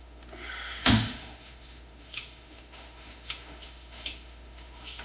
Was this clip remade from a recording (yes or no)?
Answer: yes